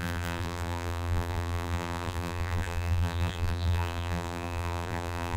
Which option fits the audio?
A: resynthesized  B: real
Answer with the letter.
A